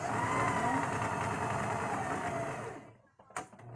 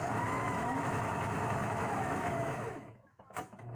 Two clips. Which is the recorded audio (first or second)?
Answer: first